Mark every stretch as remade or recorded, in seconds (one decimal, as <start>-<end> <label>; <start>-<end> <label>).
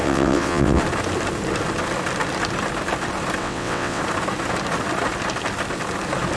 0.0-0.8 remade; 0.8-3.4 recorded; 3.4-4.0 remade; 4.0-6.4 recorded